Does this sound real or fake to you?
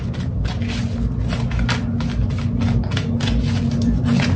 real